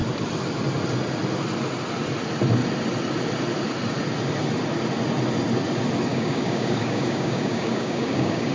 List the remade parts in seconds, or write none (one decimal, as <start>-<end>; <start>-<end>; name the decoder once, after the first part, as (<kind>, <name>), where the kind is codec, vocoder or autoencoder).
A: 6.1-8.5 (codec, DAC)